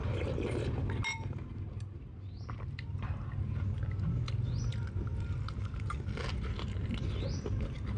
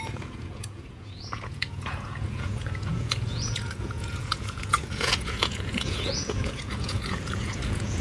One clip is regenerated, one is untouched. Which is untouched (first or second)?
first